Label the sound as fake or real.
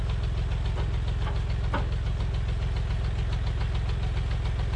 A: real